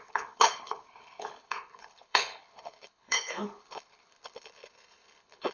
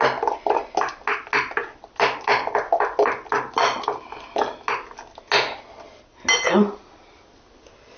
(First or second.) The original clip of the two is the second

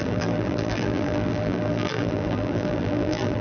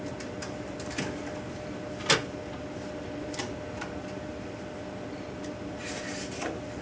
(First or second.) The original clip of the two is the second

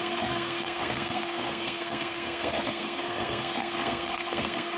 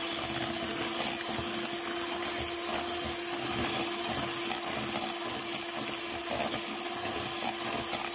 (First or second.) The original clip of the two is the second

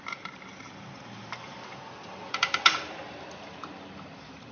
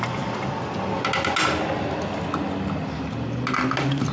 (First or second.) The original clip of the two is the second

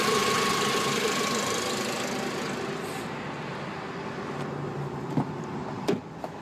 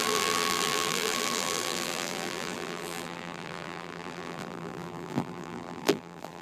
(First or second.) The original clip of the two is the first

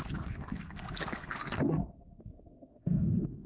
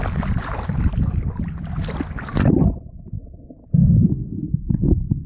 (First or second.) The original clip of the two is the second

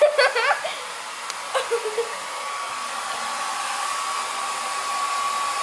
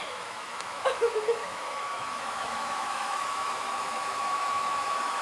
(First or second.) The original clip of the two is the first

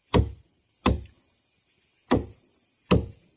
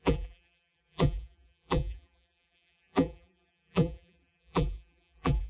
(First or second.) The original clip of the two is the first